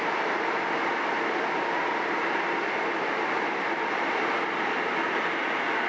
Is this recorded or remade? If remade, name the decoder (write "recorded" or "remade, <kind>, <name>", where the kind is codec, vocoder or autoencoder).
recorded